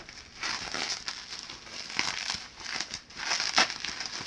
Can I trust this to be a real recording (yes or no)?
yes